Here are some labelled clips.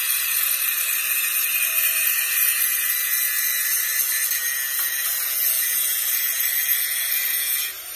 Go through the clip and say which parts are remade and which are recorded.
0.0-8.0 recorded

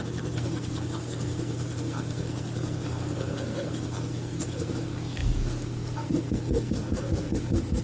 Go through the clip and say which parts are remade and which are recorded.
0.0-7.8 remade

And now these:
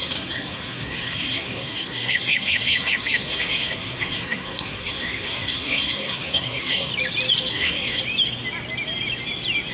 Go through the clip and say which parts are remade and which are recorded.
0.0-6.9 remade; 6.9-7.5 recorded; 7.5-8.0 remade; 8.0-9.7 recorded

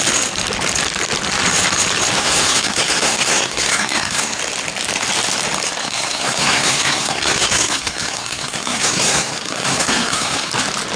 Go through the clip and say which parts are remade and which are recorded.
0.0-2.2 recorded; 2.2-4.4 remade; 4.4-5.8 recorded; 5.8-10.5 remade; 10.5-11.0 recorded

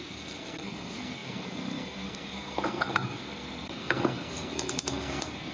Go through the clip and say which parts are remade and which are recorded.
0.0-5.5 remade